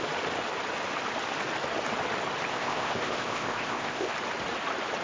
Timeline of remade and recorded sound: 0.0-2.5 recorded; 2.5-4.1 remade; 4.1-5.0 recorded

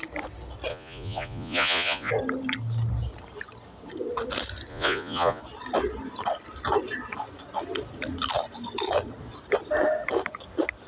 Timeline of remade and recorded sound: 0.0-0.7 recorded; 0.7-2.1 remade; 2.1-4.7 recorded; 4.7-5.4 remade; 5.4-10.9 recorded

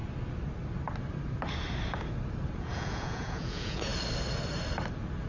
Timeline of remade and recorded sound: 0.0-2.6 recorded; 2.6-3.9 remade; 3.9-5.3 recorded

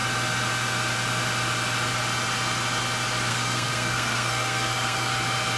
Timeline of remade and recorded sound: 0.0-3.3 recorded; 3.3-5.1 remade; 5.1-5.6 recorded